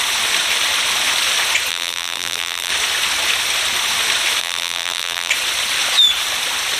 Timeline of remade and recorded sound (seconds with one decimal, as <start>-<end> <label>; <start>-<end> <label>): 0.0-1.7 recorded; 1.7-2.7 remade; 2.7-4.4 recorded; 4.4-5.3 remade; 5.3-6.8 recorded